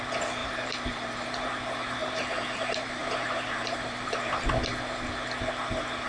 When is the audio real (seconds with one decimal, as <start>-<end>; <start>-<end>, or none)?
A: 0.0-0.4; 1.5-2.0; 4.5-6.1